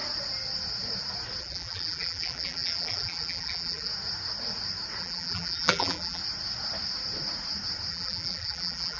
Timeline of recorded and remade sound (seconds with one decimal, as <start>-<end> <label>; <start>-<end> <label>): 0.0-1.4 recorded; 1.4-3.9 remade; 3.9-5.0 recorded; 5.0-6.2 remade; 6.2-7.9 recorded; 7.9-9.0 remade